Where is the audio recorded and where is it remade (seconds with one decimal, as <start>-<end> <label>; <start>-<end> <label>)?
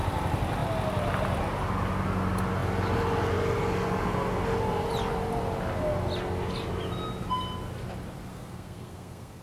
0.0-8.3 recorded; 8.3-9.4 remade